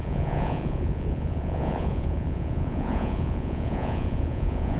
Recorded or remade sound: remade